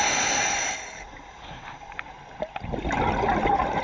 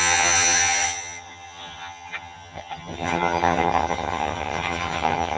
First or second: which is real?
first